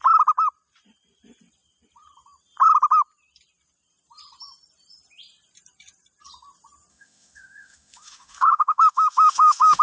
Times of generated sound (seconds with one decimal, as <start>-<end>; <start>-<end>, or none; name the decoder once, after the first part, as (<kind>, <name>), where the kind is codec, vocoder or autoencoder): 6.9-9.8 (autoencoder, DAC-VAE)